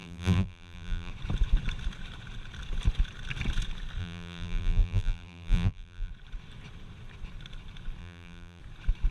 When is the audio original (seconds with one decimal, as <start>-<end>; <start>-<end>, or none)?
1.1-4.0; 6.1-8.0; 8.6-9.1